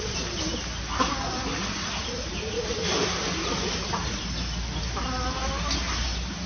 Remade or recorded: recorded